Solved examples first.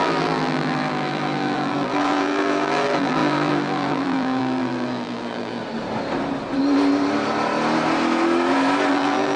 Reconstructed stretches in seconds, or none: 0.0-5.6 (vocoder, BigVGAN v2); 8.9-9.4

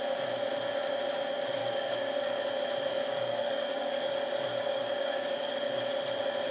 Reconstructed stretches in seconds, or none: 1.6-2.4 (codec, DAC); 2.9-4.1; 4.5-5.9

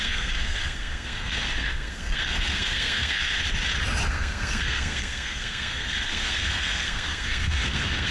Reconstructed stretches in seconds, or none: 0.0-3.4 (codec, SNAC); 4.1-8.1

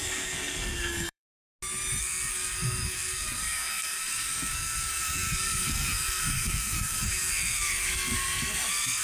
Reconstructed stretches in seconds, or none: 0.0-1.4 (codec, SNAC); 2.0-9.0

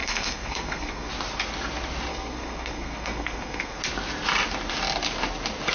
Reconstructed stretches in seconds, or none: 0.0-1.1 (codec, SNAC); 2.1-3.8

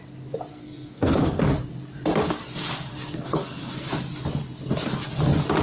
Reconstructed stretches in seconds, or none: 0.5-1.5 (codec, SNAC); 2.9-3.9

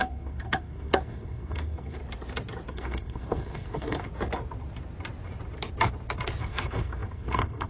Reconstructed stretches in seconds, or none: 0.0-2.0 (codec, SNAC); 2.7-4.1; 6.4-7.7